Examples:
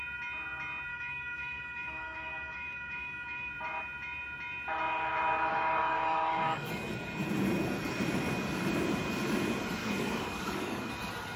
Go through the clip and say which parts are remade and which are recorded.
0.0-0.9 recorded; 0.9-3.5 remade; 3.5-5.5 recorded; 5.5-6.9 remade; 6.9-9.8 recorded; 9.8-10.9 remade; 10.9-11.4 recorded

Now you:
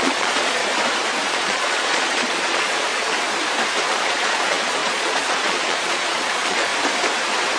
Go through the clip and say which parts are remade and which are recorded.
0.0-0.6 remade; 0.6-1.3 recorded; 1.3-2.9 remade; 2.9-3.8 recorded; 3.8-6.7 remade; 6.7-7.6 recorded

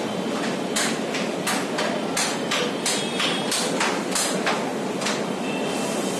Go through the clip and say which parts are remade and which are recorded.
0.0-6.2 recorded

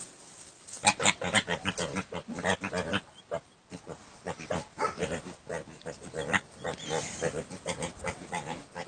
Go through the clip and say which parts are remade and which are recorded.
0.0-8.9 recorded

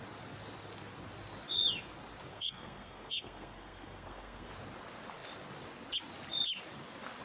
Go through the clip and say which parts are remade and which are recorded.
0.0-2.3 recorded; 2.3-4.5 remade; 4.5-7.2 recorded

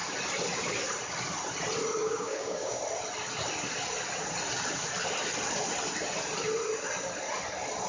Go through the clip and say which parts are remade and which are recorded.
0.0-2.0 recorded; 2.0-2.8 remade; 2.8-7.9 recorded

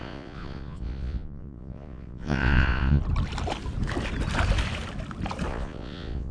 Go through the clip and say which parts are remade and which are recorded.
0.0-3.0 remade; 3.0-5.5 recorded; 5.5-6.3 remade